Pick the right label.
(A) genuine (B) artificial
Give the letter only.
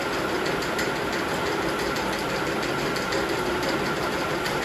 A